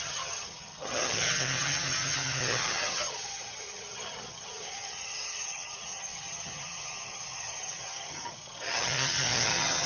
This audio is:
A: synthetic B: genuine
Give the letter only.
A